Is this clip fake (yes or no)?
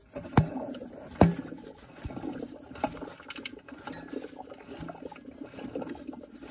no